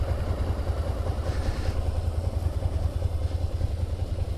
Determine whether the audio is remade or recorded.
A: recorded